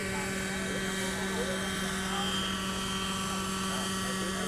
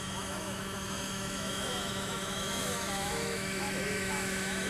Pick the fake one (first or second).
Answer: second